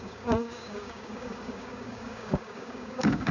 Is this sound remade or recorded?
remade